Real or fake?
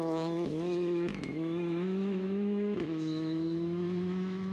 fake